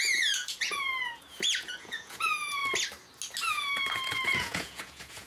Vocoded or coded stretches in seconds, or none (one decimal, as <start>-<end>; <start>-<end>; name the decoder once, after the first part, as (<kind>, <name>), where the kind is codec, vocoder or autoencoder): 0.0-2.6 (vocoder, Vocos); 3.5-5.3